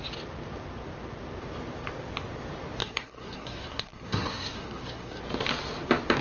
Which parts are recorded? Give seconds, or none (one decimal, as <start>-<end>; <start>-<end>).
0.0-2.8; 5.2-6.2